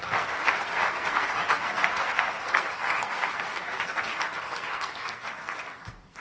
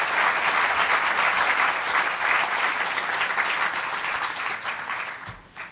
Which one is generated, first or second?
first